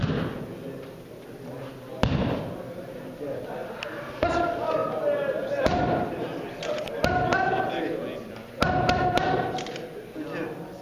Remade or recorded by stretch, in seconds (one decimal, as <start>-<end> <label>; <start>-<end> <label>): 0.0-8.1 recorded; 8.1-9.8 remade; 9.8-10.8 recorded